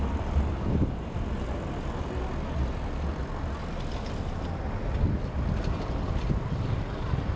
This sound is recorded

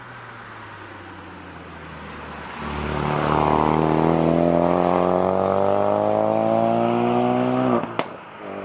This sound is recorded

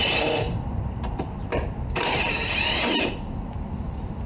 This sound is recorded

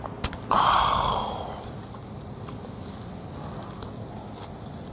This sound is recorded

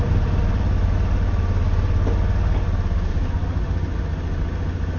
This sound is recorded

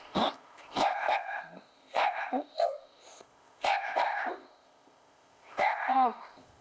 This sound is remade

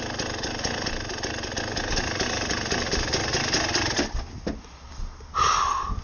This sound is recorded